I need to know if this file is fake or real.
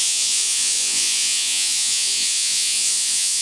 fake